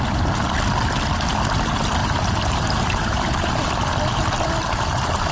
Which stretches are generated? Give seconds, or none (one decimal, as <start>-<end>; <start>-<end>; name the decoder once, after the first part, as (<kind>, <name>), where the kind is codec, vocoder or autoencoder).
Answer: 2.0-3.5 (vocoder, BigVGAN v2)